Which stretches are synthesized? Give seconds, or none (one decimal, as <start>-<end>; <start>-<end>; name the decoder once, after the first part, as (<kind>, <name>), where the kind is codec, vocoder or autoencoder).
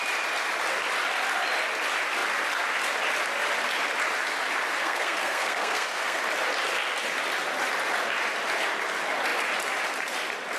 4.8-6.2 (codec, SNAC)